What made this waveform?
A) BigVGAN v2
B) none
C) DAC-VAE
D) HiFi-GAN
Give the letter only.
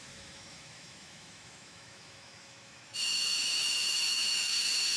C